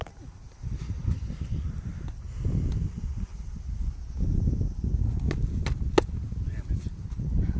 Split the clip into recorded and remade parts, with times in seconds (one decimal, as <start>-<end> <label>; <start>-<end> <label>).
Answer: 0.0-7.6 recorded